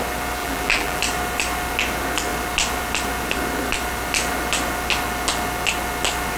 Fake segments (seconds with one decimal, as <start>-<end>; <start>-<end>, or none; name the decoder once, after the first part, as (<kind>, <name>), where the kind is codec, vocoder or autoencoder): 0.4-1.0 (vocoder, BigVGAN v2)